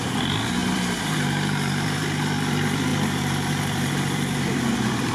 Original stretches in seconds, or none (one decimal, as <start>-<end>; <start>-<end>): none